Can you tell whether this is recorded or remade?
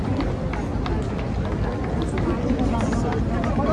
recorded